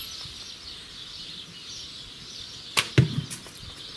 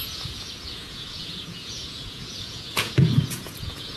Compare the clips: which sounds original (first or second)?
first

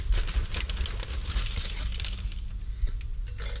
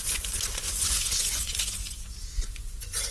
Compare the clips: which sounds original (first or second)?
first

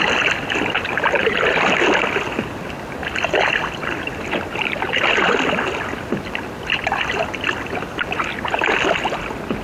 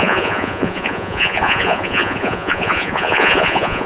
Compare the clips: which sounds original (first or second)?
first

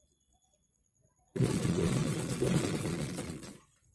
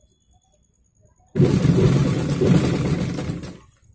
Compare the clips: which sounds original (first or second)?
second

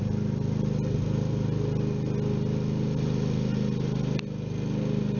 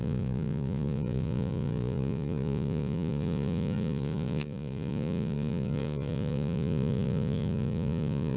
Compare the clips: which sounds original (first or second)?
first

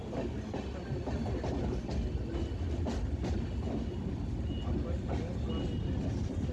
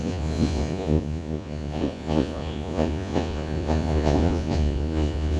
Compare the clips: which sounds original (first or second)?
first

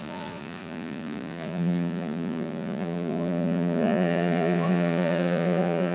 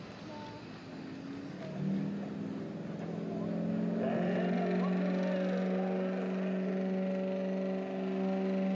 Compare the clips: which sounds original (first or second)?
second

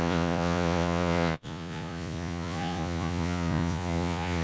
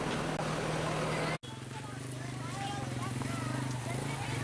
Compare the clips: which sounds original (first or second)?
second